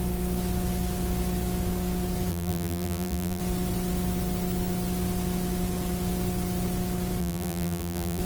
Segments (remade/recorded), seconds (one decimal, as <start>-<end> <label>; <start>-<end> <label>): 0.0-2.3 recorded; 2.3-3.4 remade; 3.4-7.2 recorded; 7.2-8.2 remade